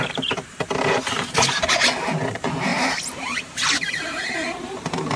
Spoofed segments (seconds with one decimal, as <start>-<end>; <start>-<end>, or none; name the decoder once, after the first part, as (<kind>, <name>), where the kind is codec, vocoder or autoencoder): 0.0-5.2 (vocoder, BigVGAN v2)